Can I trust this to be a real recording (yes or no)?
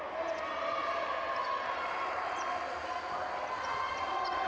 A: yes